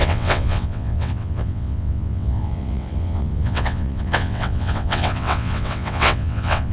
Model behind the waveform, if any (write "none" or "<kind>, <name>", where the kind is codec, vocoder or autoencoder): vocoder, WaveNeXt